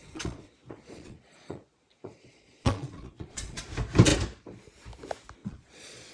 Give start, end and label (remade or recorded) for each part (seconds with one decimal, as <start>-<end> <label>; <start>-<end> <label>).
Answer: 0.0-3.6 remade; 3.6-5.4 recorded; 5.4-6.1 remade